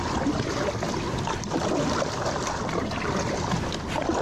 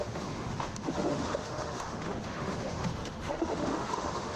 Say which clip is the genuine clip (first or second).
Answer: first